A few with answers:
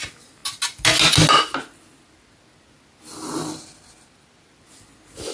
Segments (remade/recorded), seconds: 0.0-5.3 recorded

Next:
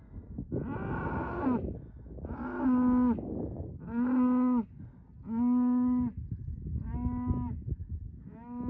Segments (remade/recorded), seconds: 0.0-8.7 recorded

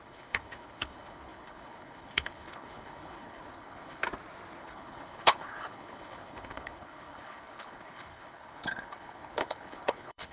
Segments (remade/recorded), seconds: 0.0-4.0 remade; 4.0-4.6 recorded; 4.6-10.3 remade

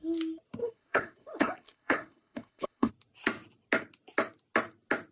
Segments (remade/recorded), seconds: 0.0-0.6 recorded; 0.6-2.9 remade; 2.9-5.1 recorded

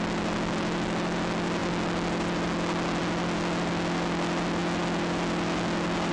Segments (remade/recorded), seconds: 0.0-6.1 recorded

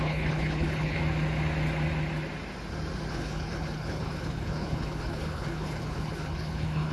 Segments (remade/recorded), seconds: 0.0-1.0 remade; 1.0-3.1 recorded; 3.1-6.9 remade

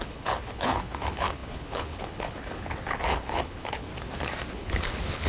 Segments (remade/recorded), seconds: 0.0-3.9 remade; 3.9-4.5 recorded; 4.5-5.3 remade

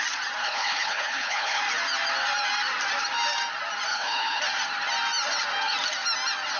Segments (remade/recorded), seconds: 0.0-0.4 recorded; 0.4-1.6 remade; 1.6-3.9 recorded; 3.9-4.4 remade; 4.4-6.6 recorded